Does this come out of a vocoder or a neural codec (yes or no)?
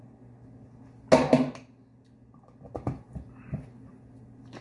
no